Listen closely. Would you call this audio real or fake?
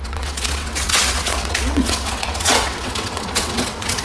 fake